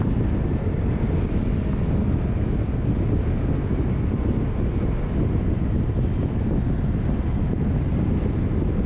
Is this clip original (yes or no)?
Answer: yes